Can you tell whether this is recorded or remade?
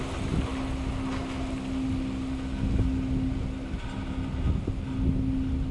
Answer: recorded